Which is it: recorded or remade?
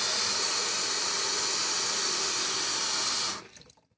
recorded